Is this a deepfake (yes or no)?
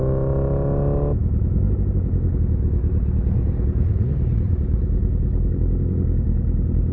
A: no